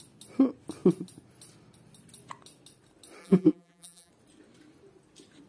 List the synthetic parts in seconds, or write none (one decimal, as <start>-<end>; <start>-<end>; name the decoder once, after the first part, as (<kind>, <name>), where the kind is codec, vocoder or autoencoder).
3.2-4.1 (vocoder, BigVGAN v2)